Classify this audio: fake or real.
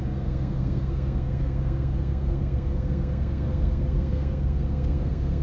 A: fake